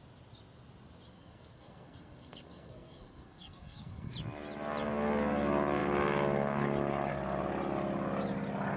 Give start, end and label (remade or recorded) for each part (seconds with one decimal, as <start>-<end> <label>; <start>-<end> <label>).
0.0-1.1 recorded; 1.1-4.1 remade; 4.1-8.8 recorded